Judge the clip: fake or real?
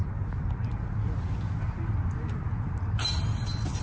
real